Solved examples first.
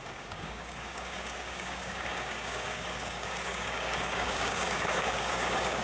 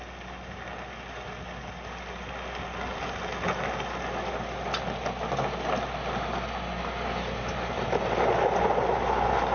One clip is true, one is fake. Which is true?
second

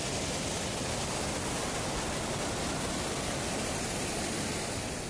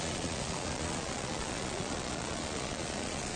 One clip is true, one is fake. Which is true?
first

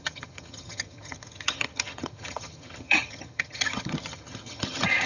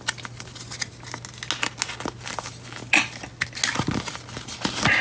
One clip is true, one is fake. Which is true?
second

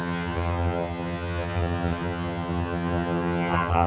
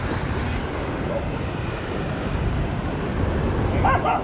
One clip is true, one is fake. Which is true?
second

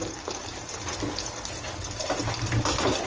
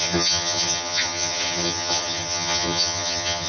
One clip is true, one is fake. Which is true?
first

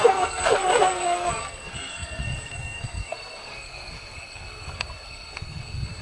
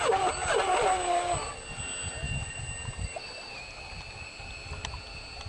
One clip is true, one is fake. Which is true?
second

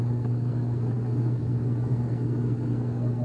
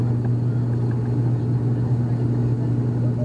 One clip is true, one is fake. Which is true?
second